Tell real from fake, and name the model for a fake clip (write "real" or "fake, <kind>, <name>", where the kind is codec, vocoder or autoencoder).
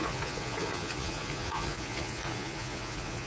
fake, vocoder, Vocos